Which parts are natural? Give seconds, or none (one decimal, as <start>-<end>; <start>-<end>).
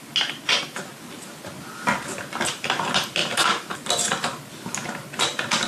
0.0-5.7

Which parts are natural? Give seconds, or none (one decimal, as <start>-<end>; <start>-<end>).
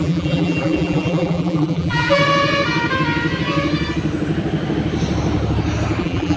2.2-6.0